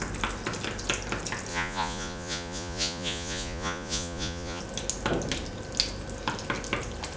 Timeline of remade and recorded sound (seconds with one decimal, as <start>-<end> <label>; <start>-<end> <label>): 0.0-1.5 recorded; 1.5-4.6 remade; 4.6-7.2 recorded